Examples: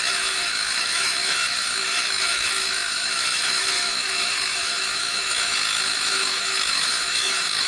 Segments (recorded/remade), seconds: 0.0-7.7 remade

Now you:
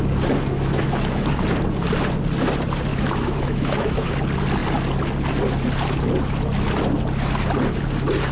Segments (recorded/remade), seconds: 0.0-0.5 recorded; 0.5-1.2 remade; 1.2-2.9 recorded; 2.9-4.1 remade; 4.1-8.3 recorded